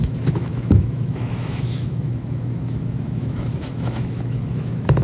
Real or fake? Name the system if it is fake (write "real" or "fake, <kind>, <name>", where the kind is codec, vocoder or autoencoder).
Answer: fake, autoencoder, DAC-VAE